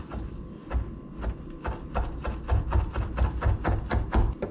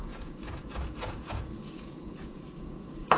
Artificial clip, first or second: second